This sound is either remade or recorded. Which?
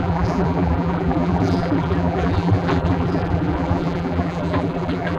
remade